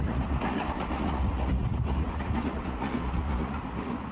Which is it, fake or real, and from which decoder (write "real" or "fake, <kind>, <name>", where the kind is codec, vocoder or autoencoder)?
fake, vocoder, Vocos